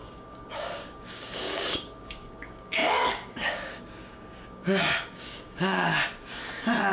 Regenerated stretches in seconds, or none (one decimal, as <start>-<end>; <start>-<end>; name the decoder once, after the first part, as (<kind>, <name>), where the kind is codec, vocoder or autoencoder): 0.0-5.9 (codec, DAC)